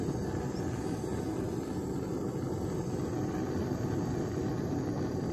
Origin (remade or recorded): recorded